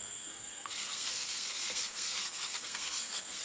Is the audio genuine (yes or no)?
no